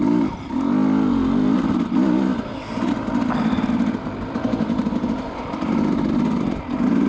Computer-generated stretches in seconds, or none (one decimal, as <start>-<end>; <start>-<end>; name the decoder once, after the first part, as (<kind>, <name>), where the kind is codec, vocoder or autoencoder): 2.3-6.6 (vocoder, BigVGAN v2)